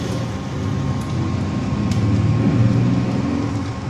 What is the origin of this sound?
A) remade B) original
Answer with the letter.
B